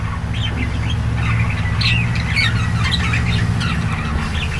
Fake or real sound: real